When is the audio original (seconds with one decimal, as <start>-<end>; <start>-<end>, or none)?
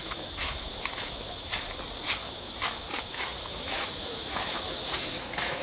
1.5-2.1